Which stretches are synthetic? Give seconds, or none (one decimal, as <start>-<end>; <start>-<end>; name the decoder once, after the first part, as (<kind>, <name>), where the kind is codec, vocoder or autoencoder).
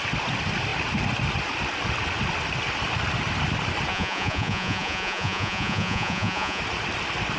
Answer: 3.9-6.6 (vocoder, Vocos)